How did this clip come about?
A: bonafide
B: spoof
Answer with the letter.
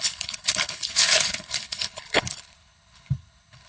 B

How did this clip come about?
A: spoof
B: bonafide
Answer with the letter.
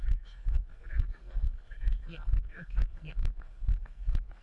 A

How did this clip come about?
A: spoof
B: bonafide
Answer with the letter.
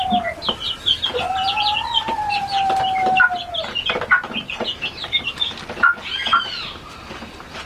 B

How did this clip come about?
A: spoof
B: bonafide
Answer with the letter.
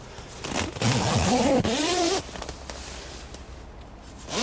B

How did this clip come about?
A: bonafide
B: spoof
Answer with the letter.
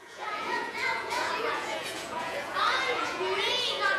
B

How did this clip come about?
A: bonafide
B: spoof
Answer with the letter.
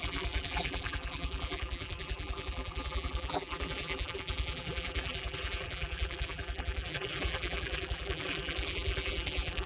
B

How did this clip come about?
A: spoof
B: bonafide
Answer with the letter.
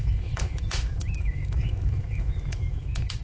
A